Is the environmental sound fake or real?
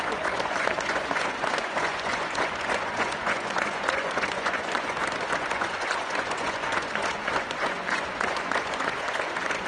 fake